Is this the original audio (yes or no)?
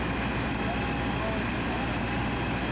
yes